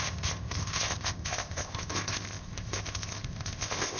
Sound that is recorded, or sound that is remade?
remade